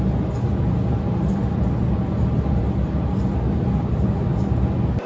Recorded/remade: recorded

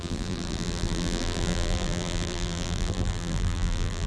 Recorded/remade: remade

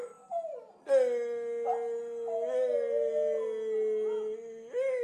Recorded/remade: recorded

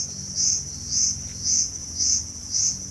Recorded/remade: recorded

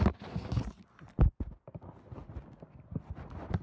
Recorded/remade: recorded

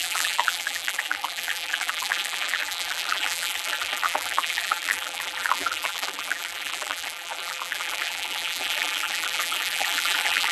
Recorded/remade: remade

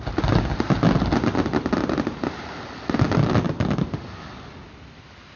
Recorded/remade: recorded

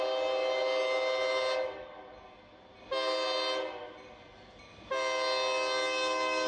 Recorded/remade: recorded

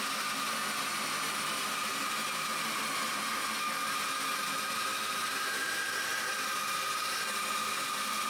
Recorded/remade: recorded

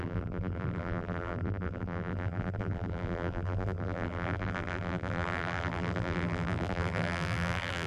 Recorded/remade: remade